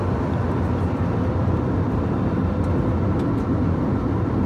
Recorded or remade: recorded